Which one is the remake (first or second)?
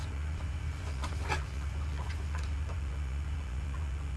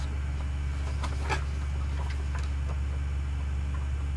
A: first